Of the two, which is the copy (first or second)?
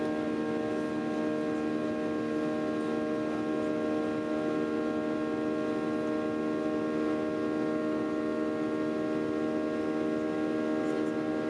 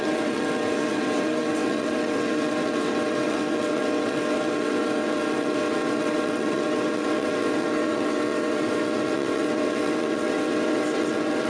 second